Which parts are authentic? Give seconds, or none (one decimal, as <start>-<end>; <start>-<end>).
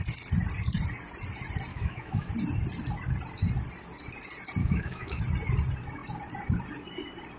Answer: 0.0-1.7; 2.3-4.6; 5.2-7.4